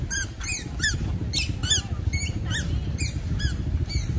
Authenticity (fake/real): real